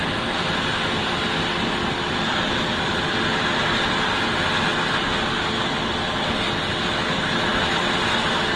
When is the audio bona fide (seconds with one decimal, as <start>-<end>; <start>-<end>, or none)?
0.0-8.6